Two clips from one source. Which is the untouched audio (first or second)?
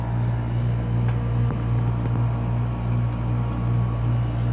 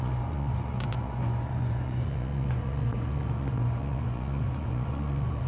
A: first